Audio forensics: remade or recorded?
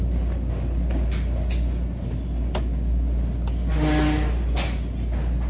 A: recorded